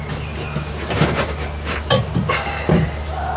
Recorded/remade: recorded